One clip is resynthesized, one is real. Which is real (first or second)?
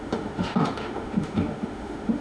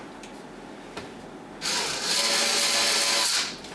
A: second